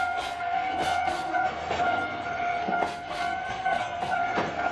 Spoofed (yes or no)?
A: yes